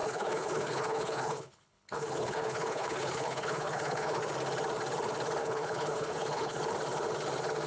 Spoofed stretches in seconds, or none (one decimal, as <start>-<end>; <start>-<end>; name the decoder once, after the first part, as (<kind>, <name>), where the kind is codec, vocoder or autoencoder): 0.0-4.2 (codec, HILCodec); 5.4-6.6